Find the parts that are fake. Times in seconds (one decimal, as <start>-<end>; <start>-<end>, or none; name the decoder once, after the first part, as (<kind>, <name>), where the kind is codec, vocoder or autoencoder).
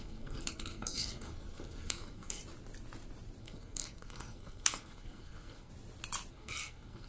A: 0.0-2.4 (codec, SNAC); 3.4-5.7; 6.3-7.1